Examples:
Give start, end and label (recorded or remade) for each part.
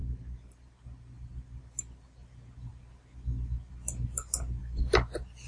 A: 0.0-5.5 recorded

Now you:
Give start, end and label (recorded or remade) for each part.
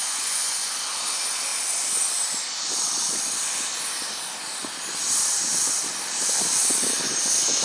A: 0.0-0.7 remade; 0.7-7.6 recorded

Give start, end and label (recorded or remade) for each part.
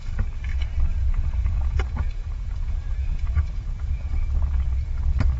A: 0.0-0.9 recorded; 0.9-4.1 remade; 4.1-5.4 recorded